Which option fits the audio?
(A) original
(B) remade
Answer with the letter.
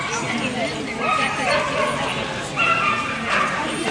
A